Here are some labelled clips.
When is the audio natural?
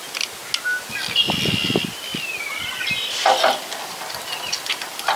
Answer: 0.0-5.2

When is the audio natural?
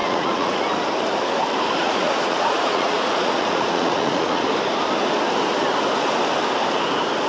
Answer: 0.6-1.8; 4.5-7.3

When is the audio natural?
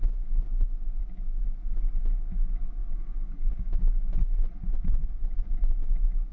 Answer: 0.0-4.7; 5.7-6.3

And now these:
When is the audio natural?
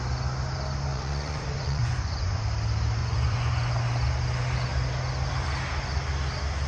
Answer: 0.0-0.9; 2.4-3.0; 3.7-6.7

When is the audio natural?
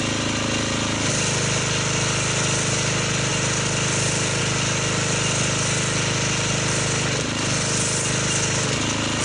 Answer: 0.0-9.2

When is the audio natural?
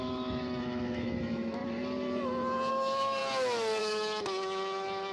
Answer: 1.6-2.7; 3.2-3.8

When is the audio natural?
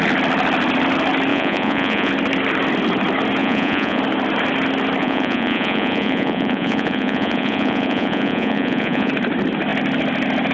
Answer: 0.0-1.3; 2.1-3.4; 4.0-5.0; 9.1-10.5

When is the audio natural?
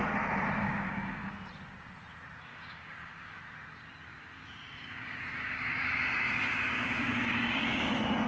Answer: 0.0-0.6; 1.3-2.5; 3.4-4.1; 7.9-8.3